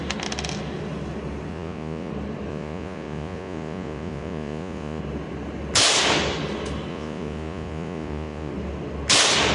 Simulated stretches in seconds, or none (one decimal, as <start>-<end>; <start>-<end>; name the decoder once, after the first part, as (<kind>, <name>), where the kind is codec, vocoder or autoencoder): 1.5-2.1 (vocoder, Vocos); 2.5-5.0; 6.9-8.5